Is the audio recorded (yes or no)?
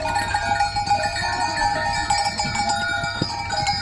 yes